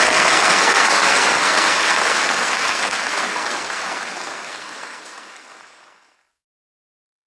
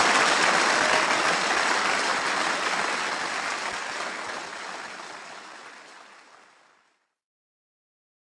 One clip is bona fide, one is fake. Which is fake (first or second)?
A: first